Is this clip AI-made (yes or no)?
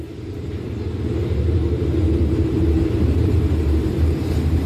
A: yes